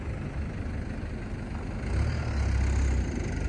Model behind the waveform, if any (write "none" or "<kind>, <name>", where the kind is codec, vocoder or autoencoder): none